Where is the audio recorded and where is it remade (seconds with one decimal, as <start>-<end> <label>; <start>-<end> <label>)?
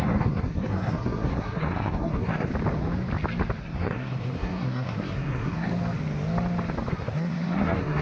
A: 0.0-2.5 remade; 2.5-3.6 recorded; 3.6-5.7 remade; 5.7-6.9 recorded; 6.9-8.0 remade